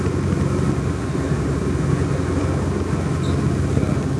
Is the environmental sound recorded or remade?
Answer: recorded